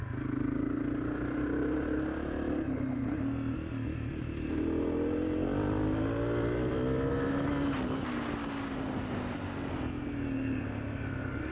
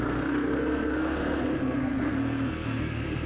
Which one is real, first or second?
first